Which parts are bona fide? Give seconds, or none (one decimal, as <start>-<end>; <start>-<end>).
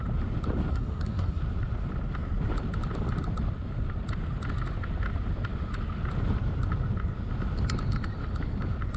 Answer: 0.0-0.7; 1.4-9.0